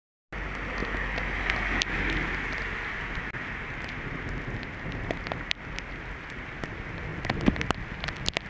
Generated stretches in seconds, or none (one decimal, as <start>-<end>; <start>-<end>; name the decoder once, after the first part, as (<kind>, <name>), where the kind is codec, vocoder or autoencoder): none